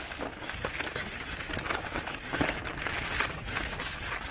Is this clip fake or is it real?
real